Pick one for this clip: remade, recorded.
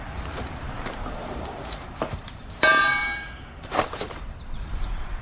remade